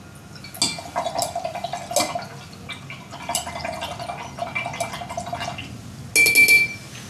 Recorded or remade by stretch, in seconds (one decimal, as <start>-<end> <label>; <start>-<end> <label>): 0.0-7.1 recorded